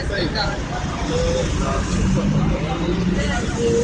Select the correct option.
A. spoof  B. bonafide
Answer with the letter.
B